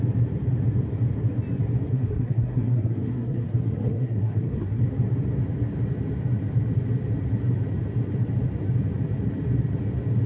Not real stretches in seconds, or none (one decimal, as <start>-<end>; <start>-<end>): 1.9-4.8